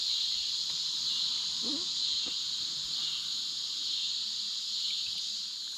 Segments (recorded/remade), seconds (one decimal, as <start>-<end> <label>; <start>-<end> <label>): 0.0-5.8 recorded